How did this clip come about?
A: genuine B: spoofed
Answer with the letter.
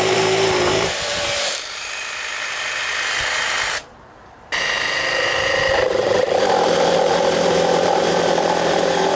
B